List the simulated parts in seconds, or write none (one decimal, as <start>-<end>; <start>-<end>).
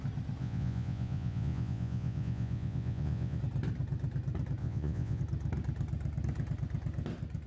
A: 0.4-3.4; 4.6-5.2